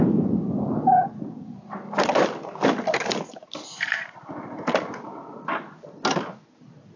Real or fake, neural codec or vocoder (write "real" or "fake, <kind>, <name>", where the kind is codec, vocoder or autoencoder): real